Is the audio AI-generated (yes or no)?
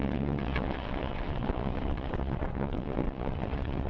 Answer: yes